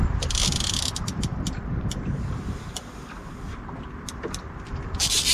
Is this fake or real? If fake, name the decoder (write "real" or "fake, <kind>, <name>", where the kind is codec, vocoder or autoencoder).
fake, vocoder, BigVGAN v2